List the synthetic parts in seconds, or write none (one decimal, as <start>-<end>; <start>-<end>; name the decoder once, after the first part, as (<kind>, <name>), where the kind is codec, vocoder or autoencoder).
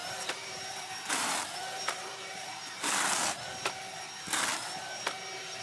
0.0-3.4 (vocoder, BigVGAN v2)